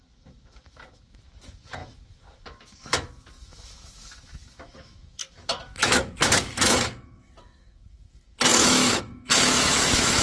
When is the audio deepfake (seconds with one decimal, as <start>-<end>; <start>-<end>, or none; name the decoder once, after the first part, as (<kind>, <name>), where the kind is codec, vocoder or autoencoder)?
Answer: 0.0-10.2 (autoencoder, DAC-VAE)